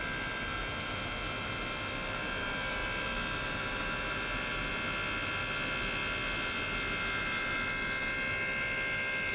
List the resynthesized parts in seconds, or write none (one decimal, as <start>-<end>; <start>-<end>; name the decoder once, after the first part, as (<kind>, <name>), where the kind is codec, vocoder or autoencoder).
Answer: none